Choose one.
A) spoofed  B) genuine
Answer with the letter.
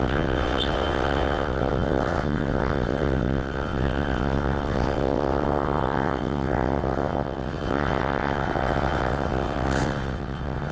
A